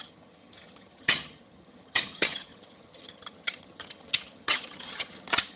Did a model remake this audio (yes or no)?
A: yes